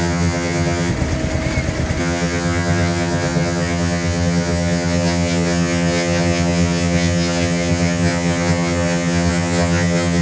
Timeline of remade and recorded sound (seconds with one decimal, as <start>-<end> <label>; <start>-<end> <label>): 0.0-0.9 remade; 0.9-2.0 recorded; 2.0-10.2 remade